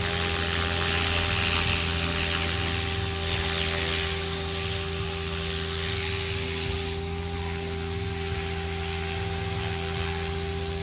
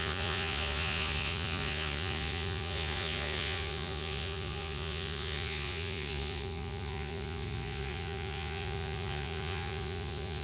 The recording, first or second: first